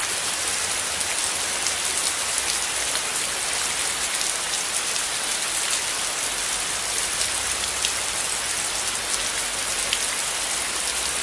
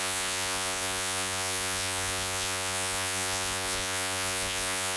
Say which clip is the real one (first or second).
first